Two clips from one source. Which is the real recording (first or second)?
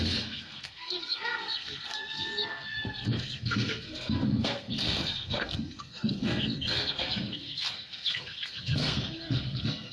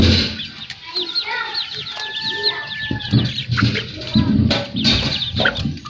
second